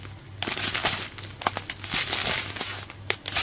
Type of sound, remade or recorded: recorded